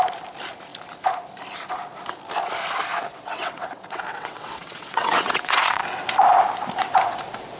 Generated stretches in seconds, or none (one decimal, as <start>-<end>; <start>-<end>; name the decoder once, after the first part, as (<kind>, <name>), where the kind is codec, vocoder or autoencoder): 3.1-5.8 (vocoder, WaveNeXt)